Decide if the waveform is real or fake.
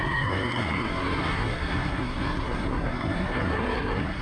fake